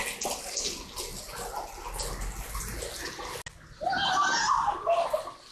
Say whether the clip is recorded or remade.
recorded